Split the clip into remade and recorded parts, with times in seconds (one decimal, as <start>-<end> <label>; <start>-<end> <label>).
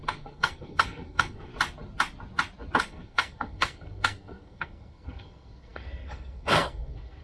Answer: 0.0-1.5 remade; 1.5-2.8 recorded; 2.8-7.2 remade